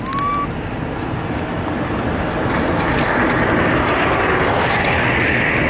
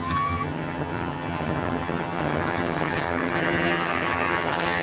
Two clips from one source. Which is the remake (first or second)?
second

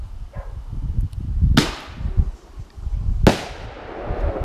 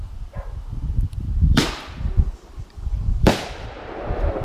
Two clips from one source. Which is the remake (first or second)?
second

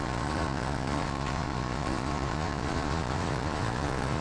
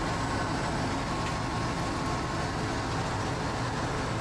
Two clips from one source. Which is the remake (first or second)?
first